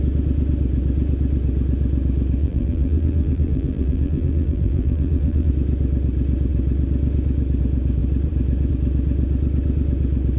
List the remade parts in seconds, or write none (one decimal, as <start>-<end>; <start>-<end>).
2.4-5.5